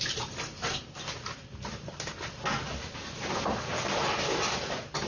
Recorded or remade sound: recorded